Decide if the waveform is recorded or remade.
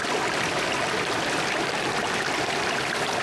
recorded